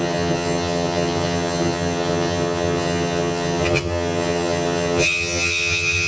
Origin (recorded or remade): remade